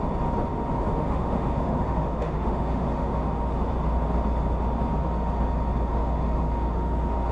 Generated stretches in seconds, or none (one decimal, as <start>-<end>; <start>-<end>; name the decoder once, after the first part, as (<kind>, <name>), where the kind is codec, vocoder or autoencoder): 0.9-3.7 (autoencoder, DAC-VAE); 5.9-7.3